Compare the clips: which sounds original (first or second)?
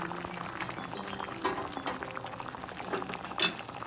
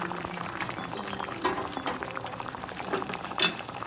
first